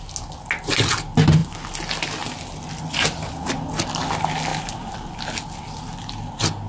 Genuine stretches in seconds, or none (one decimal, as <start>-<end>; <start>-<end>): 0.0-6.7